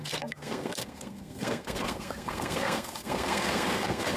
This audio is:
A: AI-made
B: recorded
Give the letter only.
A